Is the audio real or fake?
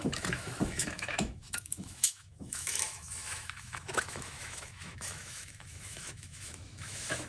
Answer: fake